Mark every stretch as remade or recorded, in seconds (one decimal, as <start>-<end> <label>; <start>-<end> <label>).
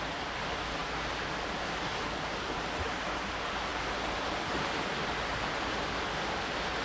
0.0-6.8 recorded